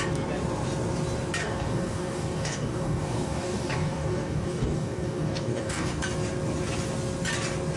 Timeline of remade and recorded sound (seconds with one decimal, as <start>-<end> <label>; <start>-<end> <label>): 0.0-1.4 recorded; 1.4-6.0 remade; 6.0-7.8 recorded